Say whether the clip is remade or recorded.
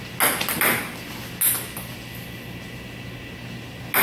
recorded